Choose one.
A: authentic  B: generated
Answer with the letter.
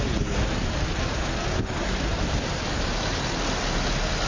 A